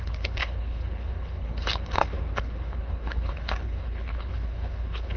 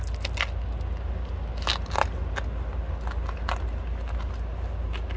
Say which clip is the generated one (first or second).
first